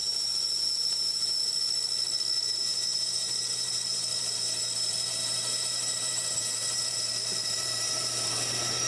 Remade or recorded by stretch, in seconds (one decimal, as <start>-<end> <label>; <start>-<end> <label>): 0.0-1.4 remade; 1.4-2.5 recorded; 2.5-8.9 remade